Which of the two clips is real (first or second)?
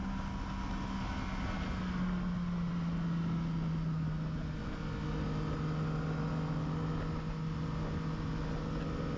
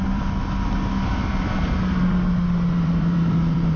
first